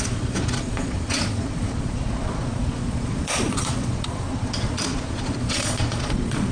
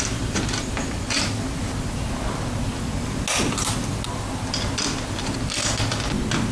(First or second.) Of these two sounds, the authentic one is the second